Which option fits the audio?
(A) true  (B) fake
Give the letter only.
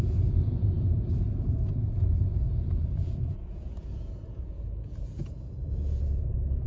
B